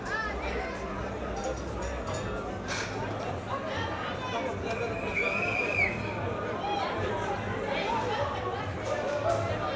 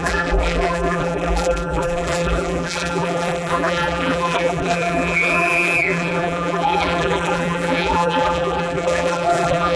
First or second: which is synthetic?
second